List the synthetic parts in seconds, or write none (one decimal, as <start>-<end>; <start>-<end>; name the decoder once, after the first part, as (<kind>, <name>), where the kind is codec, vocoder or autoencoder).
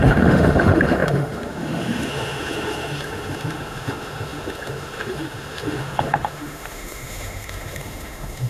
0.0-8.5 (autoencoder, DAC-VAE)